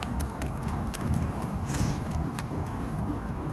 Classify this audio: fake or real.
fake